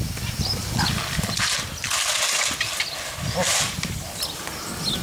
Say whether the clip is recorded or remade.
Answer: recorded